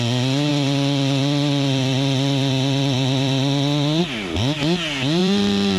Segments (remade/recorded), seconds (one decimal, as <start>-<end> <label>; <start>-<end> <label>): 0.0-0.5 recorded; 0.5-4.0 remade; 4.0-5.2 recorded; 5.2-5.8 remade

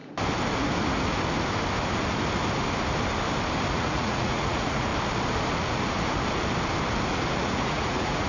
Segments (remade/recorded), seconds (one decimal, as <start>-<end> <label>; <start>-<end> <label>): 0.0-3.7 recorded; 3.7-4.9 remade; 4.9-7.4 recorded; 7.4-8.3 remade

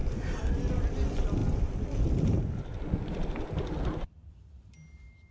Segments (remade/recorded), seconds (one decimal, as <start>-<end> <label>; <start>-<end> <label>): 0.0-5.3 recorded